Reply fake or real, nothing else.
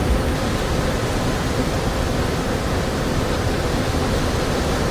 real